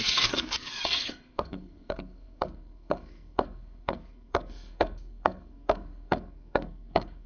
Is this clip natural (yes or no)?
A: no